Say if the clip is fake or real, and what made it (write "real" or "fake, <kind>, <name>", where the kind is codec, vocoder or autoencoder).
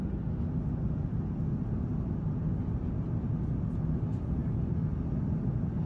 real